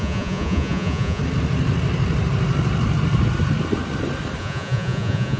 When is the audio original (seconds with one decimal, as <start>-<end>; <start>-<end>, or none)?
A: 1.2-4.4